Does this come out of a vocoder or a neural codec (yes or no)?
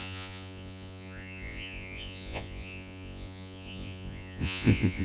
yes